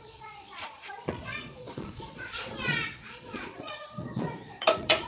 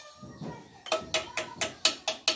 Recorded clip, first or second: second